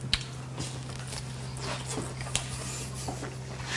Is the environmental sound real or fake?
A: real